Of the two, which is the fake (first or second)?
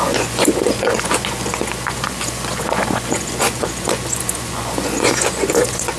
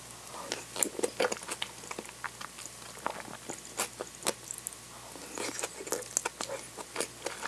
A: first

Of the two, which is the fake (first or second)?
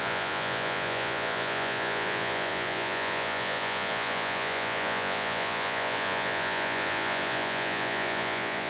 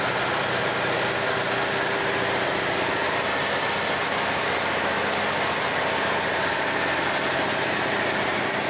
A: first